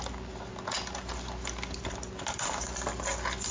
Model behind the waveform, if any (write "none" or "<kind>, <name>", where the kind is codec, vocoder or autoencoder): none